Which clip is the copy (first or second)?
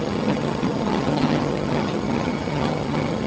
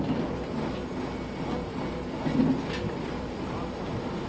first